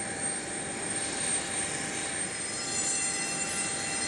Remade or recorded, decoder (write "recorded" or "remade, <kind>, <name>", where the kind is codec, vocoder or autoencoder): recorded